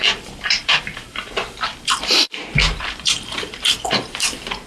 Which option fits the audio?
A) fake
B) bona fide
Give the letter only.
A